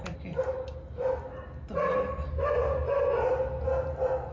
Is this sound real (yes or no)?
yes